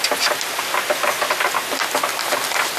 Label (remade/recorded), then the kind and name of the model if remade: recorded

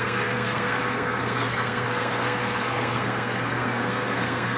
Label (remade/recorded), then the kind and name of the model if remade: remade, codec, SNAC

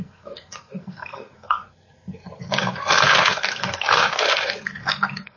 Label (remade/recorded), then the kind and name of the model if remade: remade, codec, SNAC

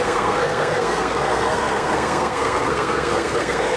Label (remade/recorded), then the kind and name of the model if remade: remade, codec, SNAC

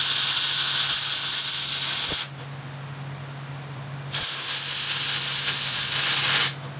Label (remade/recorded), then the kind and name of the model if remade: recorded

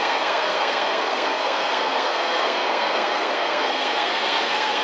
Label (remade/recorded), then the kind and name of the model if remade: remade, codec, SNAC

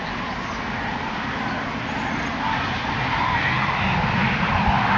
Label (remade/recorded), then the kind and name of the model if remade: recorded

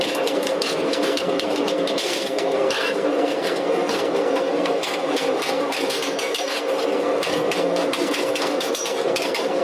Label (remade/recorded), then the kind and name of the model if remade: remade, codec, SNAC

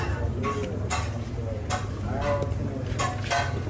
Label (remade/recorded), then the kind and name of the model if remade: recorded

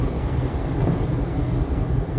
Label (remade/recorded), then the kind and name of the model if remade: remade, codec, SNAC